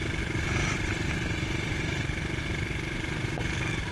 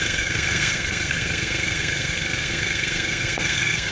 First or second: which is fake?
second